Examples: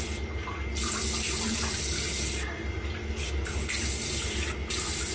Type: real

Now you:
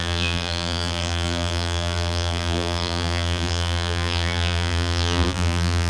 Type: fake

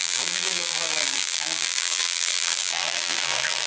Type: fake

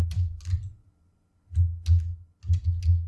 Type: real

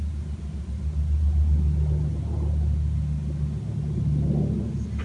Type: real